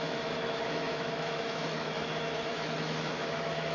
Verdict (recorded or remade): remade